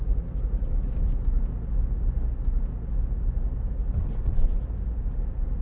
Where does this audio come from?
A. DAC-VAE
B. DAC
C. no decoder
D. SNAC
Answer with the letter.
C